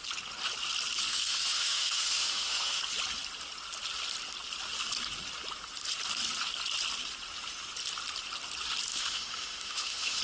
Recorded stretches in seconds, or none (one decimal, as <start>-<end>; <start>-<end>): 0.0-1.1; 2.8-8.9